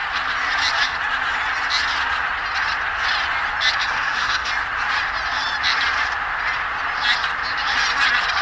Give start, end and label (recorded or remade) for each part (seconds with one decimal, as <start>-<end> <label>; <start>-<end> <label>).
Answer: 0.0-3.8 recorded; 3.8-4.5 remade; 4.5-8.4 recorded